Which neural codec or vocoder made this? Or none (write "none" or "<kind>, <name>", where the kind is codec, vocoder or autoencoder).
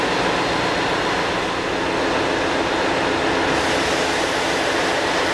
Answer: none